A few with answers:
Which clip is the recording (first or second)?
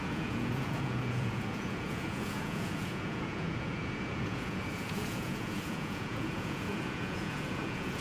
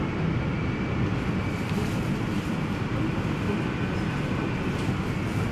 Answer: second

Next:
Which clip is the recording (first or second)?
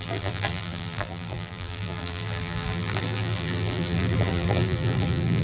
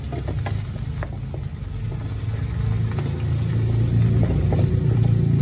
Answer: second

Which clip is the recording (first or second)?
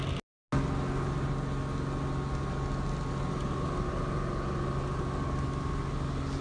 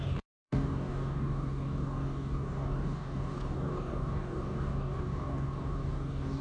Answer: first